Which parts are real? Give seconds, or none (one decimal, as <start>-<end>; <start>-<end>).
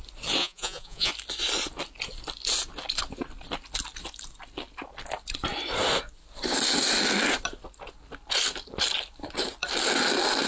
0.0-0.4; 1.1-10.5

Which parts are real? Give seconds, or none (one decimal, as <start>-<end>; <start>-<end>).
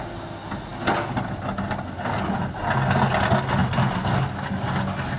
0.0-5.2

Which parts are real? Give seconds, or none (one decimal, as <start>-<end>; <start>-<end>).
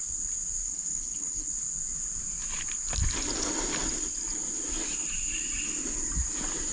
0.0-0.6; 1.5-6.7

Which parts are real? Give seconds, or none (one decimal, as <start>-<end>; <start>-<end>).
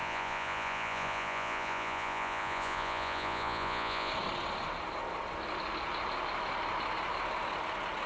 4.1-8.1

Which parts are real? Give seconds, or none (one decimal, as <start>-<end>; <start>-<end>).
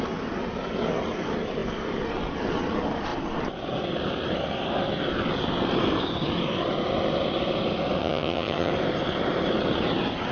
0.0-8.0; 8.7-10.3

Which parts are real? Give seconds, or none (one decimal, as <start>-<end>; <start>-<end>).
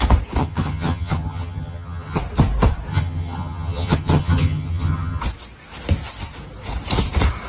0.0-0.4; 2.2-2.9; 5.2-7.5